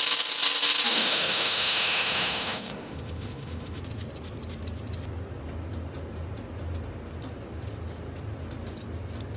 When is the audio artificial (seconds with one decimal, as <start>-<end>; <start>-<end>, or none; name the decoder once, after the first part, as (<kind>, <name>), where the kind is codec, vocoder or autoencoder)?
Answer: 0.9-3.8 (autoencoder, DAC-VAE)